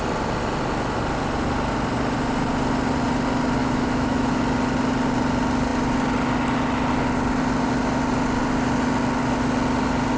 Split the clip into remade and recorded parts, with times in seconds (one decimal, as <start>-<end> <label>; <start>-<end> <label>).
0.0-3.6 recorded; 3.6-4.4 remade; 4.4-10.2 recorded